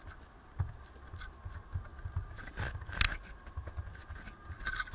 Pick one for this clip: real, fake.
real